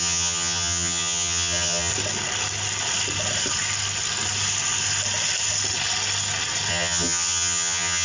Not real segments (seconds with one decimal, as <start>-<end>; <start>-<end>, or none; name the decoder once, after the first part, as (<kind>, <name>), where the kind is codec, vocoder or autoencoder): 0.0-1.9 (vocoder, HiFi-GAN); 6.7-8.0